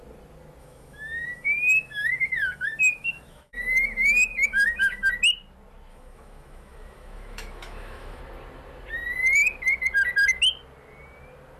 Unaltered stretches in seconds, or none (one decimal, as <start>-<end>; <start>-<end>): 0.0-0.6; 5.1-5.9; 8.2-11.6